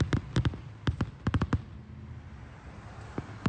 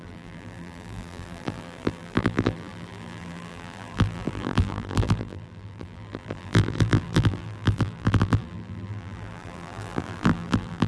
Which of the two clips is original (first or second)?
first